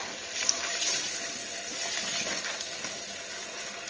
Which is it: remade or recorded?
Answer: recorded